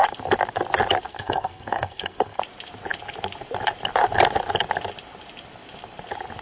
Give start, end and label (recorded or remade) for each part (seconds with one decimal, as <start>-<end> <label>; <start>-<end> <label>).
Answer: 0.0-1.1 recorded; 1.1-2.4 remade; 2.4-6.4 recorded